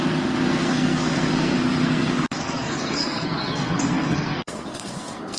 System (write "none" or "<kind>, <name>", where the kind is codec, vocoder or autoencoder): codec, SNAC